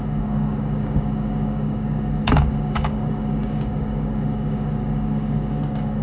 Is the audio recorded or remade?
remade